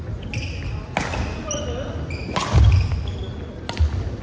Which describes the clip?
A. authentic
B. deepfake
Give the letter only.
A